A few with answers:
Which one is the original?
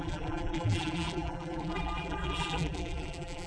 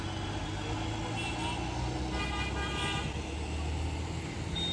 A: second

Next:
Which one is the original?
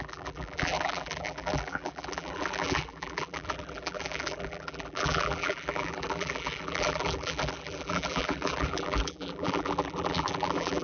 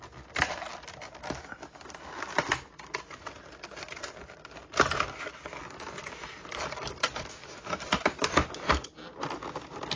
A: second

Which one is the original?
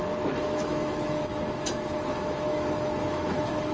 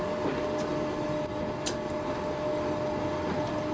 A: second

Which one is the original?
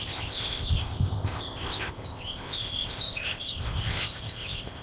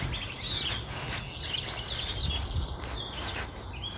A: second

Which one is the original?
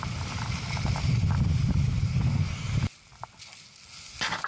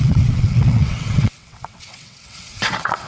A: first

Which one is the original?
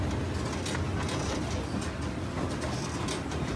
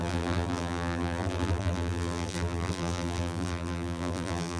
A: first